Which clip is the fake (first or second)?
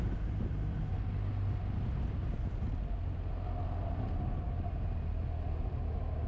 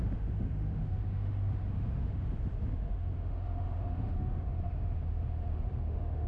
second